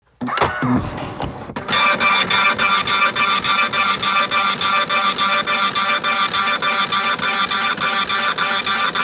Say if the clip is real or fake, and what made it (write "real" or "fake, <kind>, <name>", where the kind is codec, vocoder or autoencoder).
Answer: real